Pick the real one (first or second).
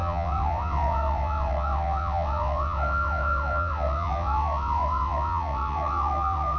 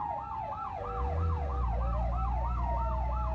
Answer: second